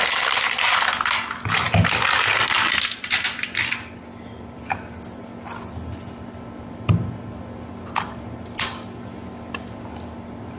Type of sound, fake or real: real